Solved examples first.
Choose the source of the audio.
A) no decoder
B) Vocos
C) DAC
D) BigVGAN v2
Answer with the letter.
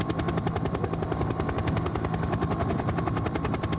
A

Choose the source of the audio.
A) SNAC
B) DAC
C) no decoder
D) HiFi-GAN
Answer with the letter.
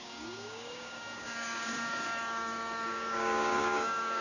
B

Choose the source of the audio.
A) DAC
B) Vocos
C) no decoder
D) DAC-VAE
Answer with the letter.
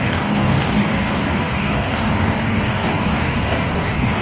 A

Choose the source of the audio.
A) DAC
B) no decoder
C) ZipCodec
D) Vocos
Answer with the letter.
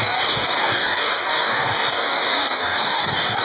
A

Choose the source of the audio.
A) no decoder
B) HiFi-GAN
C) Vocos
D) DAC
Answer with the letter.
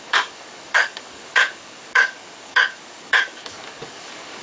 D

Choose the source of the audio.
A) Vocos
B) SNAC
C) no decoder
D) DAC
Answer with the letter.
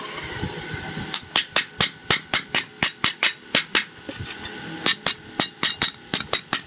C